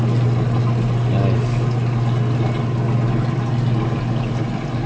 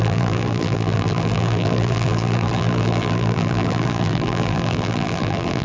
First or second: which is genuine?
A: first